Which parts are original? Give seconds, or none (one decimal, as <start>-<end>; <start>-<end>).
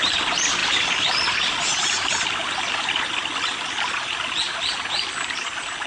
0.0-5.9